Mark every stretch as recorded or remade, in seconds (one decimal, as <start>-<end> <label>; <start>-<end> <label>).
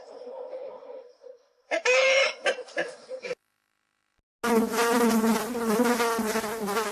0.0-0.6 recorded; 0.6-4.3 remade; 4.3-6.9 recorded